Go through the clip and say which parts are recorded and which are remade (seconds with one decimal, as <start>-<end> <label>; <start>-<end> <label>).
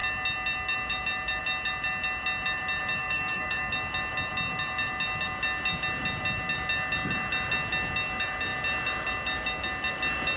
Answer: 0.0-3.0 recorded; 3.0-3.7 remade; 3.7-10.4 recorded